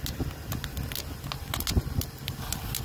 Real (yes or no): yes